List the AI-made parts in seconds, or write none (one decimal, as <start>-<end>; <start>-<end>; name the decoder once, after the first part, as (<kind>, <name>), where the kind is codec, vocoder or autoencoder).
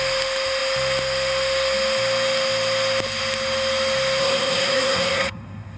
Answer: 4.2-5.8 (codec, SNAC)